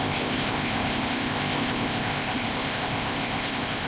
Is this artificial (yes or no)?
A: yes